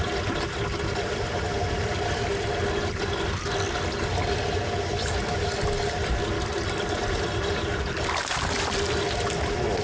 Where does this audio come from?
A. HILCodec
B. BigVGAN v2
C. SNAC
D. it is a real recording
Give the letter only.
D